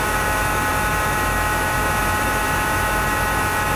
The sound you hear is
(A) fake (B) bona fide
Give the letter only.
A